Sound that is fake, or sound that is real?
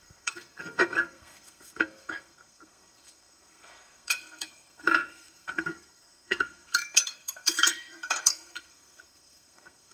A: fake